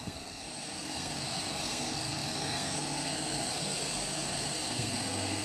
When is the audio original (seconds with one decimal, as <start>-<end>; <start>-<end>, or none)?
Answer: none